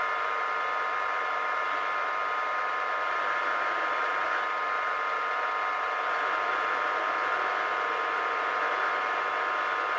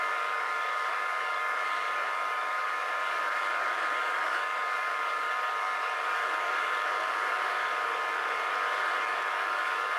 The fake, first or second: second